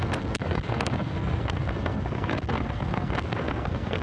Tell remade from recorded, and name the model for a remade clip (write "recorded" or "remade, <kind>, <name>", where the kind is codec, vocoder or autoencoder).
remade, codec, SNAC